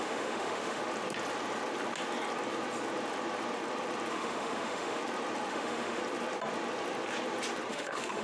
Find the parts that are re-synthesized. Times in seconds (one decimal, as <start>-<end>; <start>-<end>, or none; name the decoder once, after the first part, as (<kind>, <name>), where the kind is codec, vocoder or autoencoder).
0.0-0.8 (autoencoder, DAC-VAE); 4.1-5.0; 5.5-6.0; 7.7-8.2